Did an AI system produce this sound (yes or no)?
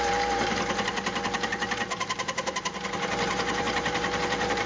yes